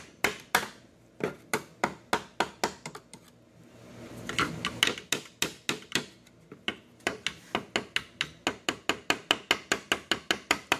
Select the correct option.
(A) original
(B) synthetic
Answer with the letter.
A